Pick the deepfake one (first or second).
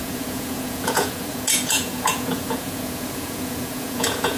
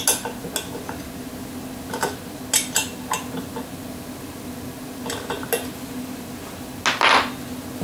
first